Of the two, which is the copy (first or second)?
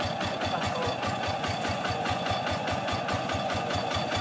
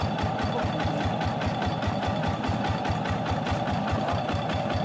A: first